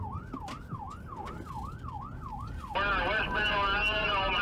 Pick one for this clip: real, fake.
real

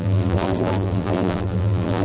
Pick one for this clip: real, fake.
fake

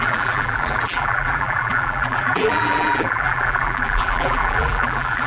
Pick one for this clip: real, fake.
fake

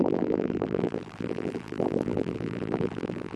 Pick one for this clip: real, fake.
fake